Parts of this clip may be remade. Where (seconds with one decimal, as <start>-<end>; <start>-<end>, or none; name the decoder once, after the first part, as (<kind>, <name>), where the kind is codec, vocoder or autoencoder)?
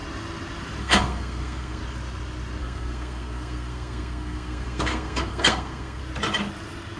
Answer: 0.8-1.8 (codec, SNAC); 2.6-6.0